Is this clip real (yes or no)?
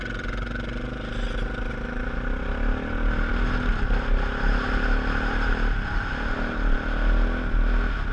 yes